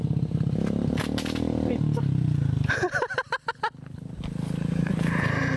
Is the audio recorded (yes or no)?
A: yes